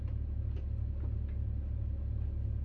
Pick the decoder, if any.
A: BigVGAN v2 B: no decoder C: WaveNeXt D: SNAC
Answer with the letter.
B